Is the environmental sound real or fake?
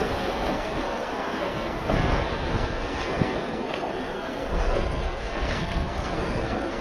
fake